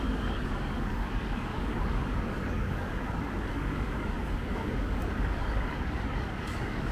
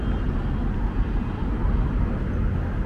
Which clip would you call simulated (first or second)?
first